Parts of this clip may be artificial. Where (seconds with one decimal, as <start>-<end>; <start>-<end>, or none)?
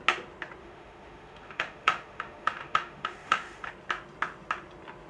0.6-3.7